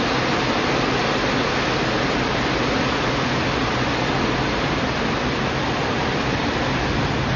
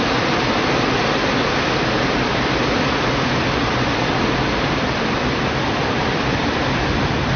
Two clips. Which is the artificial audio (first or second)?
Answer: second